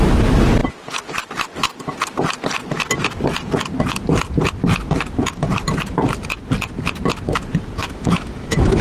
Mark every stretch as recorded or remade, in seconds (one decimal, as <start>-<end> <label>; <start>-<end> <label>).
0.0-7.8 recorded; 7.8-8.8 remade